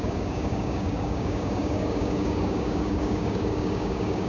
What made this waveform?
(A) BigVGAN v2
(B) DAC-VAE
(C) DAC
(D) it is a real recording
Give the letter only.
C